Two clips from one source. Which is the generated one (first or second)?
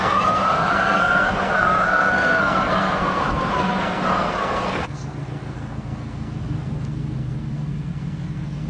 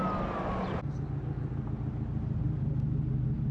first